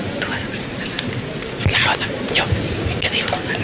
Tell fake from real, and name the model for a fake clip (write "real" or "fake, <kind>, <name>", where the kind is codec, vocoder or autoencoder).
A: real